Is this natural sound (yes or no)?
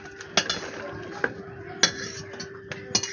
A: yes